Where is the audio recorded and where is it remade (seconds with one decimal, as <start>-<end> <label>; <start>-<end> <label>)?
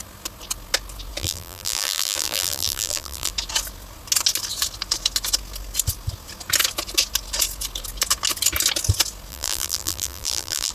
0.0-1.2 recorded; 1.2-3.3 remade; 3.3-9.3 recorded; 9.3-10.7 remade